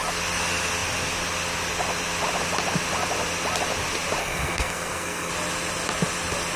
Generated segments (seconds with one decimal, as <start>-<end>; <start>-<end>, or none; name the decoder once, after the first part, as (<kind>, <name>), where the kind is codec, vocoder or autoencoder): 4.2-5.3 (codec, SNAC)